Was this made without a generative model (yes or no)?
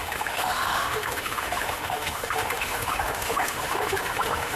no